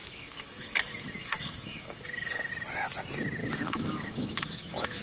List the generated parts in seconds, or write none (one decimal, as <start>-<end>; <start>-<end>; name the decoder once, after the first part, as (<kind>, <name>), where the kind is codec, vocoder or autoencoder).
0.0-2.5 (autoencoder, DAC-VAE); 3.4-5.0